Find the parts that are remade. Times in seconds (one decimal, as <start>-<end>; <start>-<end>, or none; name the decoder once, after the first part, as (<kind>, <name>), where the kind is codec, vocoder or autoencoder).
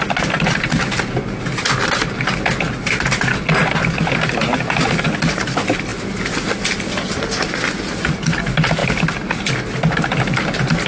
none